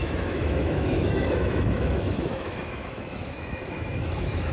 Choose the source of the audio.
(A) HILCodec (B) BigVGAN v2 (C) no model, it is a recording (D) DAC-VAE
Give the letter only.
D